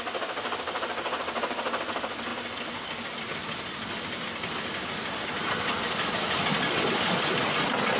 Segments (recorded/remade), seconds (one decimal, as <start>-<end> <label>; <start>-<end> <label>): 0.0-8.0 recorded